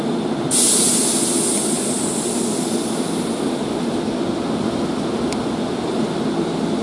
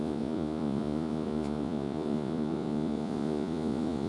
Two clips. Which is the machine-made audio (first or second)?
second